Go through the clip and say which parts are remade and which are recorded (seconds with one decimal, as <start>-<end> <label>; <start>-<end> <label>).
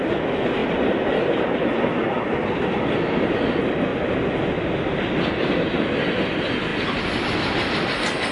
0.0-0.6 recorded; 0.6-1.9 remade; 1.9-8.3 recorded